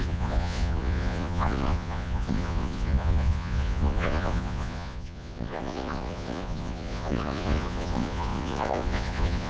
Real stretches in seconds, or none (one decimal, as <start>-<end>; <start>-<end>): none